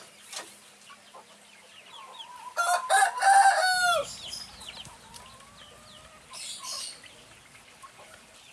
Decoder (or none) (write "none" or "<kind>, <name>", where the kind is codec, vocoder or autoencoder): none